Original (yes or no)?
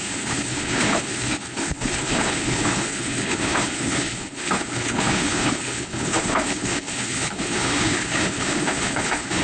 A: no